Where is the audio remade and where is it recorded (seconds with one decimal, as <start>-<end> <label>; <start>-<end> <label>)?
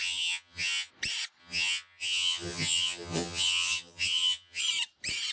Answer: 0.0-0.9 remade; 0.9-1.4 recorded; 1.4-4.6 remade; 4.6-5.3 recorded